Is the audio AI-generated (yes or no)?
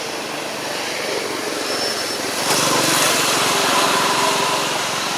yes